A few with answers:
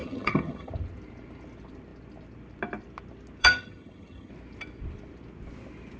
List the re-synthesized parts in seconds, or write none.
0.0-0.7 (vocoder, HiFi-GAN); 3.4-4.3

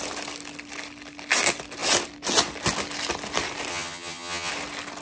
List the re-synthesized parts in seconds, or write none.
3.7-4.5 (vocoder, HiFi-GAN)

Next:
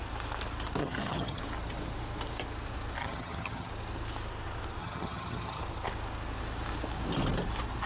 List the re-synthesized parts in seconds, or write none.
0.8-1.4 (vocoder, HiFi-GAN); 3.0-3.7; 4.8-5.6

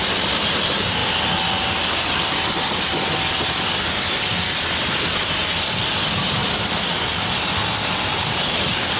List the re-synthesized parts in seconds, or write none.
none

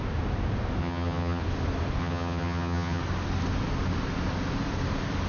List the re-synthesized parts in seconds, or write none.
0.8-1.4 (vocoder, HiFi-GAN); 2.0-3.0

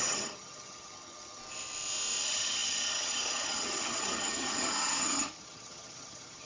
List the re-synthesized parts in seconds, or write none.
0.0-1.4 (vocoder, HiFi-GAN); 2.2-6.5

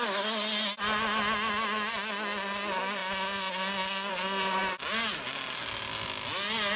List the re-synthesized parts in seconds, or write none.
none

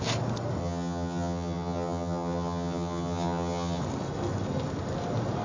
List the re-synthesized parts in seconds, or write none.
0.6-3.8 (vocoder, HiFi-GAN)